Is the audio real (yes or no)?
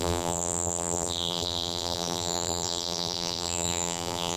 no